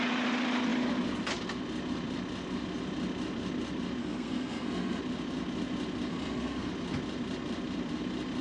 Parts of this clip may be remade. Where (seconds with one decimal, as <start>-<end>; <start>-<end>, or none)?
4.0-5.0; 6.1-6.7